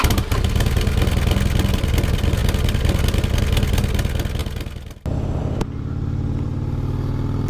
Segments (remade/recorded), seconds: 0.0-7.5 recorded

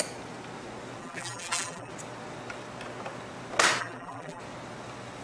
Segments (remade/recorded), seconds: 0.0-1.0 recorded; 1.0-1.9 remade; 1.9-3.8 recorded; 3.8-4.4 remade; 4.4-5.2 recorded

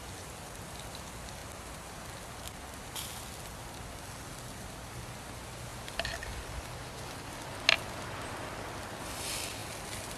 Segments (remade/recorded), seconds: 0.0-10.2 recorded

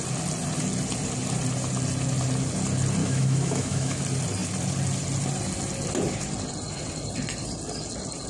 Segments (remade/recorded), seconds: 0.0-3.0 recorded; 3.0-4.0 remade; 4.0-8.3 recorded

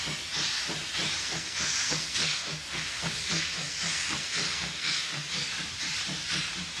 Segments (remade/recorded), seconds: 0.0-1.2 recorded; 1.2-5.3 remade; 5.3-6.8 recorded

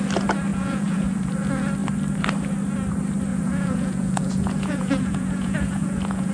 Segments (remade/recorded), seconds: 0.0-0.5 recorded; 0.5-1.3 remade; 1.3-3.3 recorded; 3.3-6.3 remade

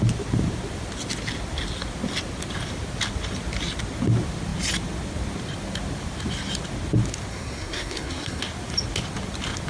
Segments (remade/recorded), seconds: 0.0-7.3 recorded; 7.3-8.4 remade; 8.4-9.7 recorded